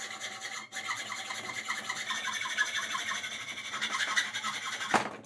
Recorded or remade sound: recorded